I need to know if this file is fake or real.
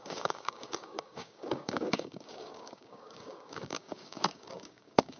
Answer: fake